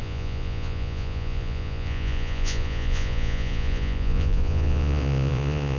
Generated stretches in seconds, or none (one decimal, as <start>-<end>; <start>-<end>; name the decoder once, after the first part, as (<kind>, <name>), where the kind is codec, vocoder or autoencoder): 0.0-5.8 (vocoder, Vocos)